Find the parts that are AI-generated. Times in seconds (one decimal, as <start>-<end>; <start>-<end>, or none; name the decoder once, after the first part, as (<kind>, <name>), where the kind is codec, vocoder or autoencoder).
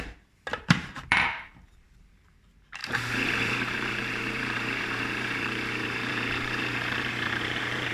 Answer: 0.0-7.9 (vocoder, BigVGAN v2)